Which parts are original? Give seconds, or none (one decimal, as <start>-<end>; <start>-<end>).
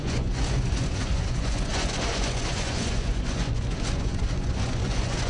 none